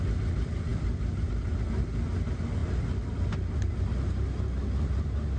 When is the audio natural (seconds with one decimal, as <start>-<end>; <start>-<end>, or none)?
0.0-5.4